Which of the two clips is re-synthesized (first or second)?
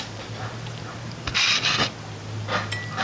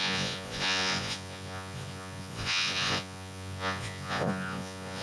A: second